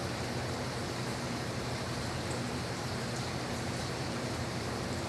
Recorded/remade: remade